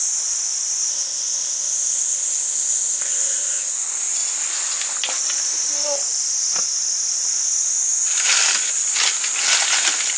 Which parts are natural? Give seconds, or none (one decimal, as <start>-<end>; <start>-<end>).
0.0-0.9; 3.7-10.2